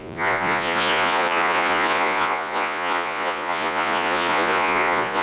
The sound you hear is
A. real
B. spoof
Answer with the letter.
B